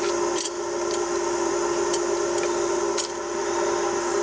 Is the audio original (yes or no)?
no